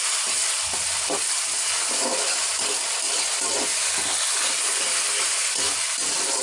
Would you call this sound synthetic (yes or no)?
no